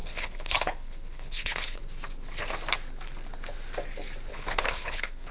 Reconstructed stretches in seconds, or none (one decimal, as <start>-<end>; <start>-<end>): 0.0-1.8; 4.3-5.3